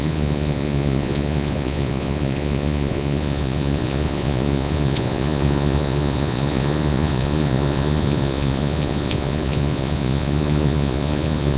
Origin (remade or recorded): remade